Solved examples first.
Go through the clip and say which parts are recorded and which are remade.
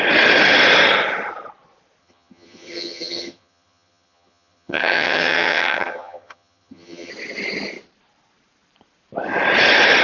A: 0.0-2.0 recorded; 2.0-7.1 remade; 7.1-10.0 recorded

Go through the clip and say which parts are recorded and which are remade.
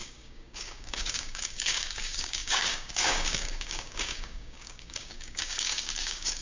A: 0.0-6.4 remade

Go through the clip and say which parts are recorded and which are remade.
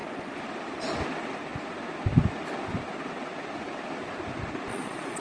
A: 0.0-4.7 recorded; 4.7-5.2 remade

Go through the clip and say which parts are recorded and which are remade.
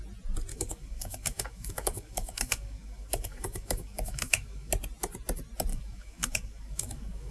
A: 0.0-0.5 recorded; 0.5-4.7 remade; 4.7-5.7 recorded; 5.7-7.3 remade